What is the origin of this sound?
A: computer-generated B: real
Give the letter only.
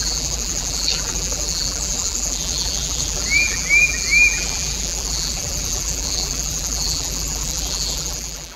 A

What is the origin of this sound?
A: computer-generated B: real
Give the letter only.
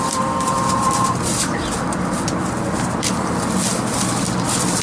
A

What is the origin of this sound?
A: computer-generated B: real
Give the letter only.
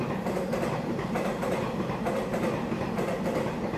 B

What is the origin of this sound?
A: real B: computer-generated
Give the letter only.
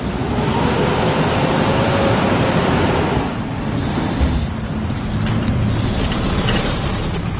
B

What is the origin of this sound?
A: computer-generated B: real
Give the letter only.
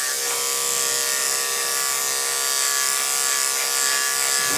B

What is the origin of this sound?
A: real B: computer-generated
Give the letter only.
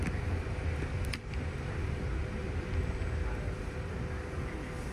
A